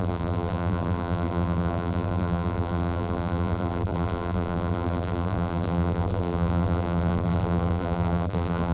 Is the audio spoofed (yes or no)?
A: yes